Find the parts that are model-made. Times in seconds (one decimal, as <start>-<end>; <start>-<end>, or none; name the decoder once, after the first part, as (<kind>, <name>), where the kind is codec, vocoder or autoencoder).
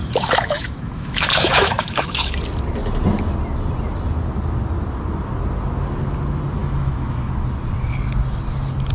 0.0-2.4 (autoencoder, DAC-VAE); 6.6-7.3